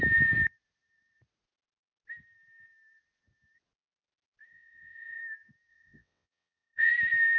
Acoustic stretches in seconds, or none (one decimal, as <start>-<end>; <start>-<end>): 0.0-4.5; 5.2-5.7; 6.9-7.4